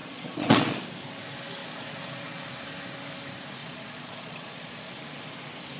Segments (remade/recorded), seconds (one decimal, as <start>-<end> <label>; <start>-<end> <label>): 0.0-0.8 remade; 0.8-1.6 recorded; 1.6-2.5 remade; 2.5-3.6 recorded; 3.6-4.9 remade; 4.9-5.8 recorded